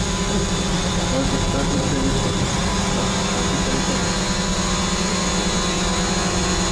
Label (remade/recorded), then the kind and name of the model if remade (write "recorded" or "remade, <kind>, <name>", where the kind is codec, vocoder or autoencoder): recorded